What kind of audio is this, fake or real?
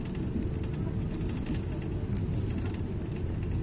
real